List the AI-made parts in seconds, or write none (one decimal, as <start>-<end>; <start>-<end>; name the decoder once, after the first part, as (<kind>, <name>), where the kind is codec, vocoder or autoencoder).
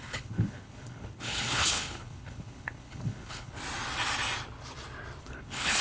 0.0-3.6 (codec, HILCodec); 5.2-5.8